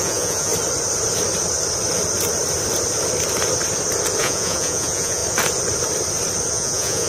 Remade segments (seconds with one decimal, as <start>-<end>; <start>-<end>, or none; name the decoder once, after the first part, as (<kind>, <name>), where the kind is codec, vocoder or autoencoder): 0.0-0.5 (vocoder, Vocos); 4.2-5.2; 6.5-7.1